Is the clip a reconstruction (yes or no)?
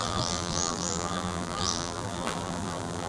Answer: yes